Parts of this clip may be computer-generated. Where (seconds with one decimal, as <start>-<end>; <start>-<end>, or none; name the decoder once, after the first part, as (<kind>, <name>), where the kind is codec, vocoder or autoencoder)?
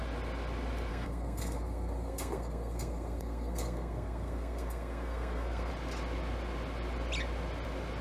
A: 0.9-5.7 (codec, SNAC)